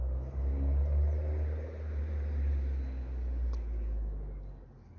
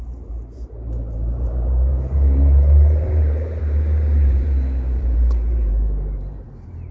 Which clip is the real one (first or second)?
first